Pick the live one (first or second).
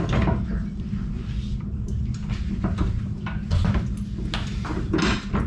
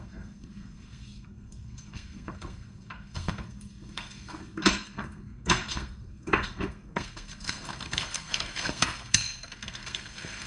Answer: first